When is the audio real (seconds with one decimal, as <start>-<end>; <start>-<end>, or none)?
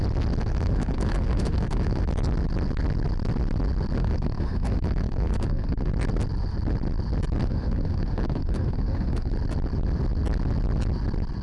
0.0-0.4; 2.1-4.0; 5.9-7.4; 9.3-11.4